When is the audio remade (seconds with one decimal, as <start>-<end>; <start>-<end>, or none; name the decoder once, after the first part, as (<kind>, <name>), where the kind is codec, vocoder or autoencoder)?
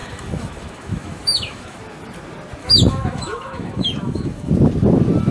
0.0-1.8 (autoencoder, DAC-VAE); 2.6-4.5